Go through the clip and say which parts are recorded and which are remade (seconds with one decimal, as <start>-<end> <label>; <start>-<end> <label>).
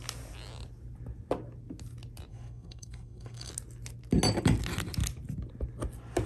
0.0-2.3 recorded; 2.3-3.5 remade; 3.5-6.3 recorded